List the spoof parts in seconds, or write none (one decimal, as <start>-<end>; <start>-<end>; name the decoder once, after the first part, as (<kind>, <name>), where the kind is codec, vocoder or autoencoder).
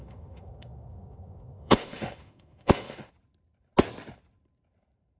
0.0-3.1 (autoencoder, DAC-VAE)